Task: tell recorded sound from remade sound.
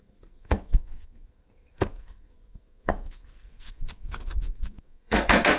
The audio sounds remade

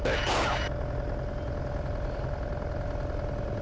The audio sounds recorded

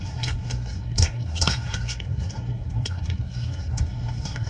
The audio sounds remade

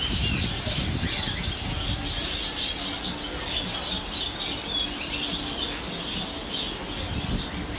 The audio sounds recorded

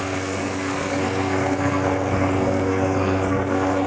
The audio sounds remade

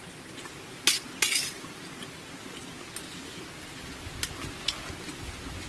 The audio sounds recorded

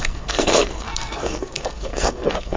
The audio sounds remade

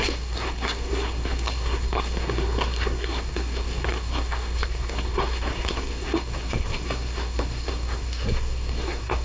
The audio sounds remade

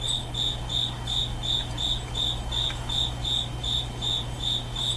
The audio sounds recorded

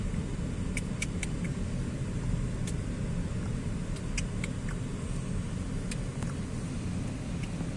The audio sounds recorded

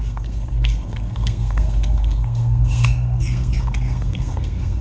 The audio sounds remade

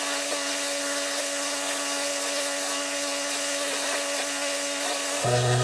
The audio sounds remade